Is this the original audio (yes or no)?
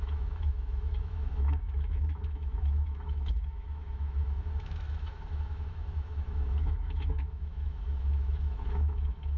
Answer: no